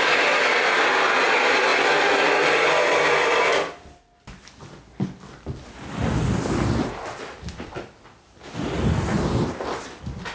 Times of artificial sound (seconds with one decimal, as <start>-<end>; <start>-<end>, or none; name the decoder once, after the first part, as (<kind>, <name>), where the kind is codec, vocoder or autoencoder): none